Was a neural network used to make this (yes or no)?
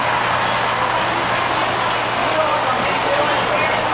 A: no